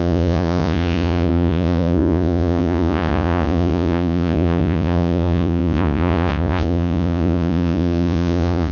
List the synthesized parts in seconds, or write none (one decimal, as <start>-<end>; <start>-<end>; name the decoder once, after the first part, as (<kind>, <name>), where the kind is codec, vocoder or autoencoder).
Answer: 0.0-8.7 (vocoder, Vocos)